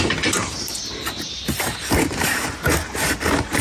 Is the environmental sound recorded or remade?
recorded